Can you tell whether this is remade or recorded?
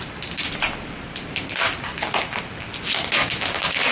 recorded